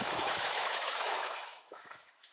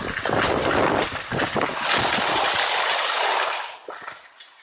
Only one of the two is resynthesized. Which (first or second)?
first